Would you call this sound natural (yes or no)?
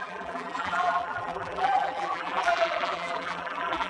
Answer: no